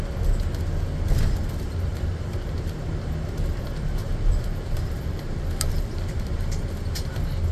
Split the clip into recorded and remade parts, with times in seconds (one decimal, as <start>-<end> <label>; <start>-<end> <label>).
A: 0.0-1.9 recorded; 1.9-2.9 remade; 2.9-4.0 recorded; 4.0-7.0 remade; 7.0-7.5 recorded